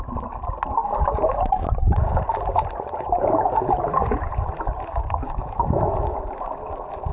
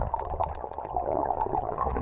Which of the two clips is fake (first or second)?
second